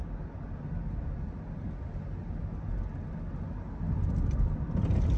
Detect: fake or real real